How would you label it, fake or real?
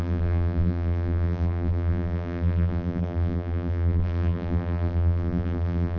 fake